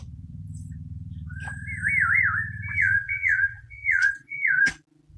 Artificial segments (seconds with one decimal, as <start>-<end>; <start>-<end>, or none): 2.7-4.7